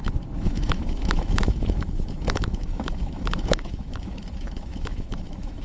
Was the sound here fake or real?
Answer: fake